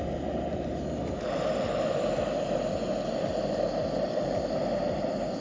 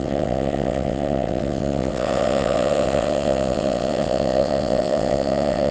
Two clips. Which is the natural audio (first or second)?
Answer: first